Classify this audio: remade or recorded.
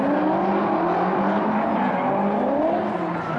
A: recorded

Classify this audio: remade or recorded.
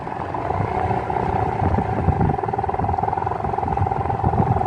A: recorded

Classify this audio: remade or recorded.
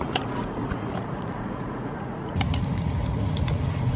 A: remade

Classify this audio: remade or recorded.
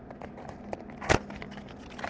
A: recorded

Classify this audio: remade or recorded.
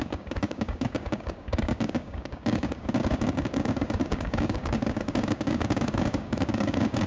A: remade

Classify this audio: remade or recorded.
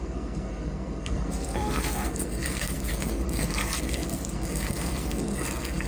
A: remade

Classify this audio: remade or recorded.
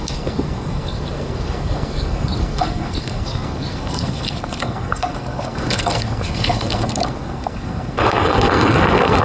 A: remade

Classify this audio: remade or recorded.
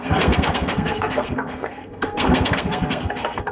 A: remade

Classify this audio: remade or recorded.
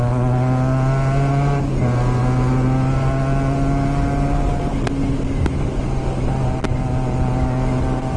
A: recorded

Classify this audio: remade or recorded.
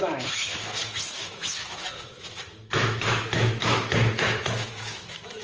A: remade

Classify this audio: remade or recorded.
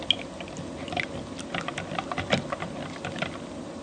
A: recorded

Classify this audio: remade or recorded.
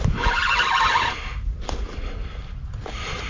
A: recorded